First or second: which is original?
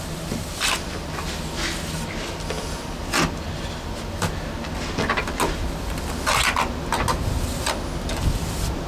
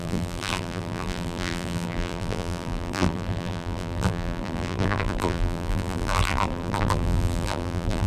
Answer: first